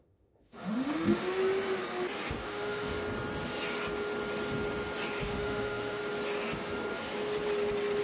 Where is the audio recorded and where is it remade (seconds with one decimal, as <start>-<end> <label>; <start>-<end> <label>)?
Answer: 0.0-1.4 remade; 1.4-2.3 recorded; 2.3-2.9 remade; 2.9-5.2 recorded; 5.2-6.0 remade; 6.0-8.0 recorded